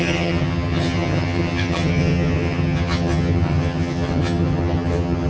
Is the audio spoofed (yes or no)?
yes